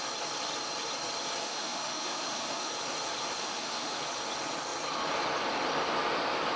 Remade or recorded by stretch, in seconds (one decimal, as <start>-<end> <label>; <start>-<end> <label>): 0.0-1.4 recorded; 1.4-2.7 remade; 2.7-3.4 recorded; 3.4-4.0 remade; 4.0-6.6 recorded